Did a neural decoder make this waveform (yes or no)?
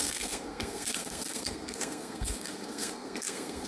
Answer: yes